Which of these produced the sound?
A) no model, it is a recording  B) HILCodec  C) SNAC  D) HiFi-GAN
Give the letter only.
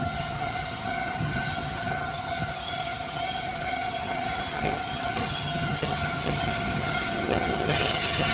D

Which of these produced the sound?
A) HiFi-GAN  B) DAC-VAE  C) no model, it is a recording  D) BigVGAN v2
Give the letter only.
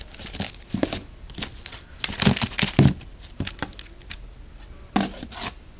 C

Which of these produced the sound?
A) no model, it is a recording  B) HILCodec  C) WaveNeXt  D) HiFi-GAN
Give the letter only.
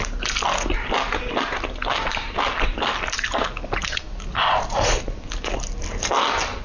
A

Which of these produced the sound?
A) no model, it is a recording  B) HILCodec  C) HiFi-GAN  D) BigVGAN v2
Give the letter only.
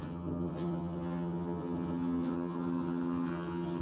C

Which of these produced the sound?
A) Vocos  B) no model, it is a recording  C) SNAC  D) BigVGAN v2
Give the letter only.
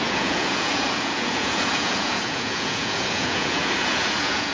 A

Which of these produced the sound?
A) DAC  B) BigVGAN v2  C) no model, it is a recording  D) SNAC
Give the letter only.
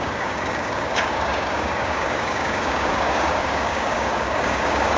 A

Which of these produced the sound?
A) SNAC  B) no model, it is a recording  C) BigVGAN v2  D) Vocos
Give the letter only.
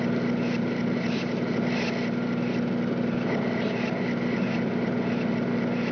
B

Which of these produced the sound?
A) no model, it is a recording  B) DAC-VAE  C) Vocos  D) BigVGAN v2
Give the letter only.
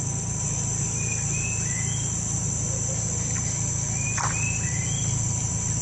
A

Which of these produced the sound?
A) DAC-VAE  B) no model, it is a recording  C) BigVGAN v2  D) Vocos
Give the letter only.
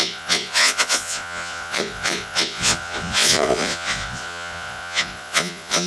D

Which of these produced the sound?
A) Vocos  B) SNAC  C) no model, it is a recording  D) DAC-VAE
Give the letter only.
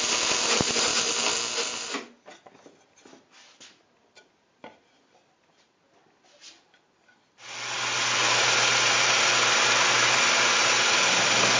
C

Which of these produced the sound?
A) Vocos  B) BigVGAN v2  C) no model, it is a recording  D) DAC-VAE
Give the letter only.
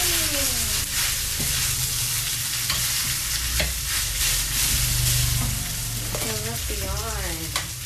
C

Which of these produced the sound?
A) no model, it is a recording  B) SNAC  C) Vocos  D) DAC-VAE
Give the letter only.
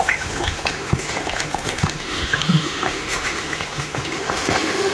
D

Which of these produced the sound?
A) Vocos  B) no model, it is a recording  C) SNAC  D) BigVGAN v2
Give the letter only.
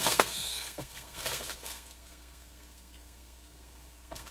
C